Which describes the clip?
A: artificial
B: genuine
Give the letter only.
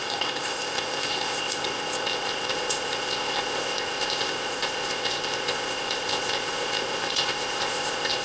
A